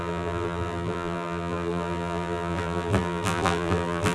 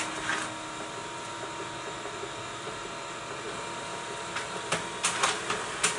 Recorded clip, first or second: second